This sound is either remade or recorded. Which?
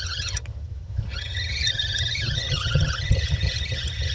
remade